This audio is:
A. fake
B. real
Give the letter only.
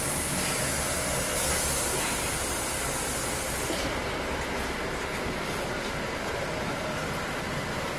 B